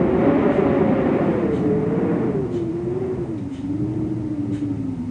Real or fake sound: real